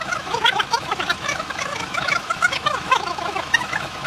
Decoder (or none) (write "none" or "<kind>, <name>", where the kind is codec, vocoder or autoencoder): autoencoder, DAC-VAE